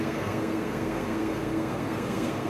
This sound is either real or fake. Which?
fake